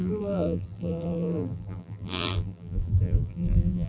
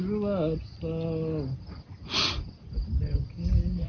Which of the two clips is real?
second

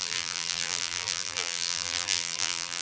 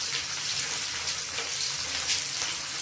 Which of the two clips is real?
second